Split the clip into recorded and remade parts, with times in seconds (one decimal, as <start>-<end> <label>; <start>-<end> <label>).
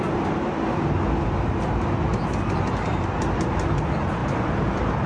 0.0-4.2 recorded; 4.2-5.1 remade